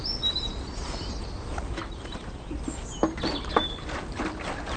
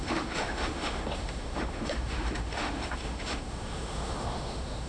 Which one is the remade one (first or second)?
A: second